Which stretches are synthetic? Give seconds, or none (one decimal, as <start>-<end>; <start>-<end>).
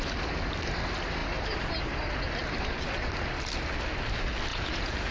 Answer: 4.5-5.1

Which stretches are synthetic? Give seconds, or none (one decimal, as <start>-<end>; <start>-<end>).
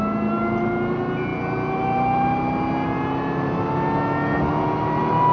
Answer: none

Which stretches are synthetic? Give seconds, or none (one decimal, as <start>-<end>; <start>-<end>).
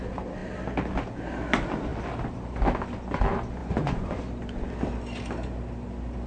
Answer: 3.6-4.2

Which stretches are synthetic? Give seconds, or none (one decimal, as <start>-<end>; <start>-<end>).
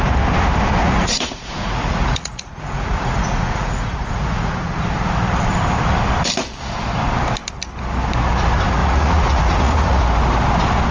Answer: 0.8-4.5; 8.8-10.0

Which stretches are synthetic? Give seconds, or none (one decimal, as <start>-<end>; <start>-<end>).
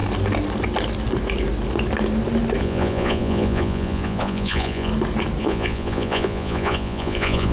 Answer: 2.6-4.9; 5.4-7.5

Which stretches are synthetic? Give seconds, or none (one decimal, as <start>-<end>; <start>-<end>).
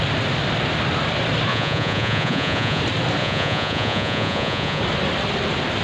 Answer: 1.5-2.8; 3.2-4.8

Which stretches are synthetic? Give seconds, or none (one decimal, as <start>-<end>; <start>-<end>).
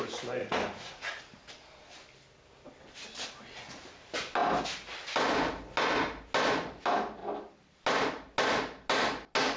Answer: 0.4-1.2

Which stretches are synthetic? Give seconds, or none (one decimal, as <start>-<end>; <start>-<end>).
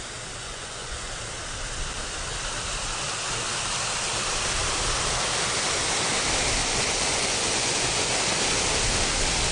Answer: 0.4-1.1; 6.6-8.1